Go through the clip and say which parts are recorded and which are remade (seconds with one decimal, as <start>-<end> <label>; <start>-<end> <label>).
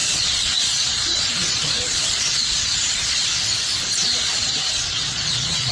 0.0-3.4 remade; 3.4-4.0 recorded; 4.0-5.7 remade